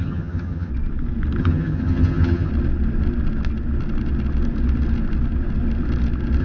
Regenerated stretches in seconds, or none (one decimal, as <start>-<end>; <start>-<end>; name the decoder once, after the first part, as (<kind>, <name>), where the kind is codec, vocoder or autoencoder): 0.0-0.7 (vocoder, HiFi-GAN); 1.4-2.5

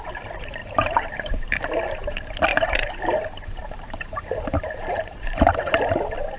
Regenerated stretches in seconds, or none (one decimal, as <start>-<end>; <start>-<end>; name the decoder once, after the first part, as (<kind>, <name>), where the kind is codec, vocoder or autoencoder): 0.6-1.6 (vocoder, BigVGAN v2); 2.5-5.7

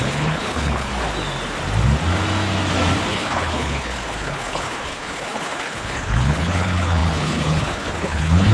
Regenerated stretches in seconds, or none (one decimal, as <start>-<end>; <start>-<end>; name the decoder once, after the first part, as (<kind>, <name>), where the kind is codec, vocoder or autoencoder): 0.0-0.9 (codec, HILCodec); 3.1-8.5

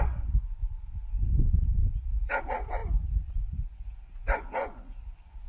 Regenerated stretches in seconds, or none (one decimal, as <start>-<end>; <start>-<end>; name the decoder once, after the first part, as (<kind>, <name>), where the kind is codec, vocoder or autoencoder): 0.0-1.8 (vocoder, Vocos); 2.4-5.5